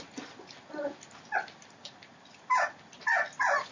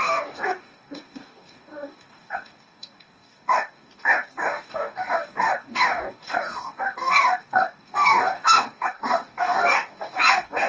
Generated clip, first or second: second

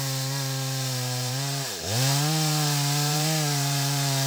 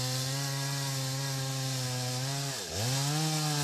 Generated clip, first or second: first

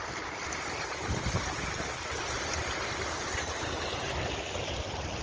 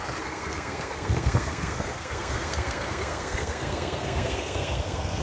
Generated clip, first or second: second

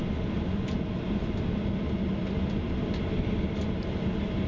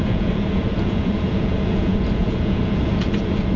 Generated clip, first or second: second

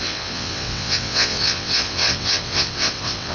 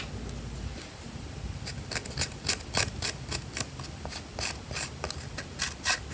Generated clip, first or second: first